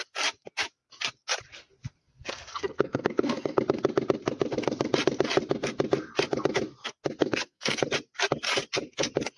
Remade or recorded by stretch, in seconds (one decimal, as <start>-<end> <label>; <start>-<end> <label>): 0.0-2.0 recorded; 2.0-3.6 remade; 3.6-7.2 recorded; 7.2-7.8 remade; 7.8-9.4 recorded